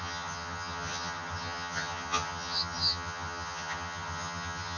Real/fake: fake